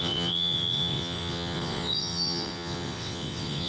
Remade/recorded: remade